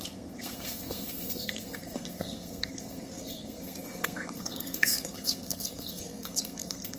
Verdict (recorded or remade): remade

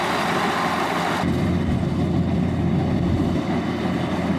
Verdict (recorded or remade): recorded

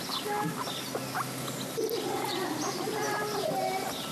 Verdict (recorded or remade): recorded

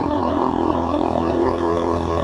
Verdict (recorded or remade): remade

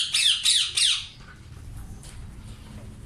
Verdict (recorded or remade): recorded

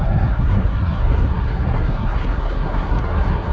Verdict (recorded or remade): remade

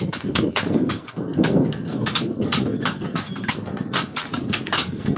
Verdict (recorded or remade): remade